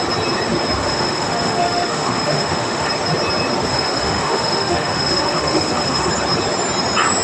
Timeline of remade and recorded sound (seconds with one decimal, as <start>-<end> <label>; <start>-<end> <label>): 0.0-0.8 recorded; 0.8-2.9 remade; 2.9-3.7 recorded; 3.7-6.1 remade; 6.1-7.2 recorded